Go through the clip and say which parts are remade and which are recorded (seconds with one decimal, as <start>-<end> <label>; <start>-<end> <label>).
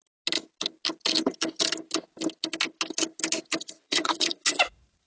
0.0-3.8 recorded; 3.8-5.1 remade